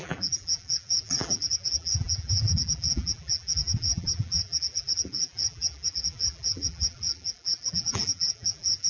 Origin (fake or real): fake